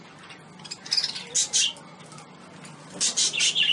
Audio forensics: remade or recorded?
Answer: recorded